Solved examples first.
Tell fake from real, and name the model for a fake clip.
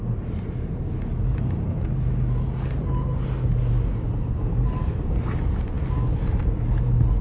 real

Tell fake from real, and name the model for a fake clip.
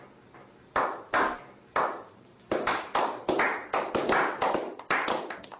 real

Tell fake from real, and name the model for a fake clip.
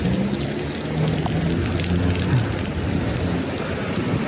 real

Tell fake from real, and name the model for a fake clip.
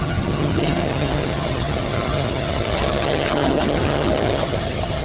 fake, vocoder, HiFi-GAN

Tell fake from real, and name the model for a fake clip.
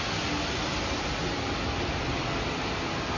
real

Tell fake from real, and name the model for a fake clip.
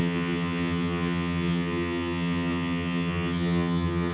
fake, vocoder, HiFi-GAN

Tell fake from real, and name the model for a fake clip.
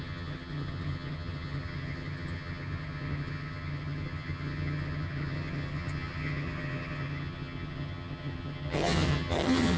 fake, vocoder, HiFi-GAN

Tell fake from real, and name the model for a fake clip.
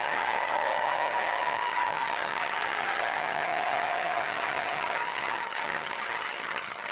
fake, vocoder, HiFi-GAN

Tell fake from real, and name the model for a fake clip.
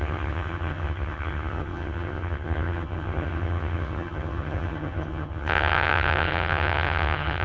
fake, vocoder, HiFi-GAN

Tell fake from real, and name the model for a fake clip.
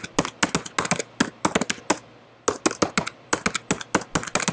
real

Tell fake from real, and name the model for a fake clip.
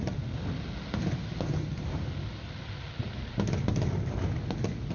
real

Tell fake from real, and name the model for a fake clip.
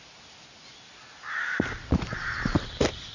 real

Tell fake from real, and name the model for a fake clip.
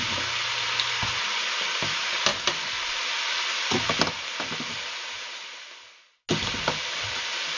real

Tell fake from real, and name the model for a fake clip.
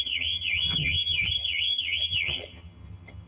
fake, vocoder, HiFi-GAN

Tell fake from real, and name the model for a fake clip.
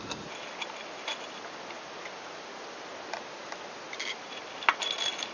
real